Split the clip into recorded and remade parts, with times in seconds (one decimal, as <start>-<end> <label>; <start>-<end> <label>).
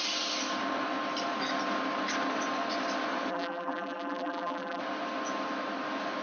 0.0-3.3 recorded; 3.3-4.8 remade; 4.8-6.2 recorded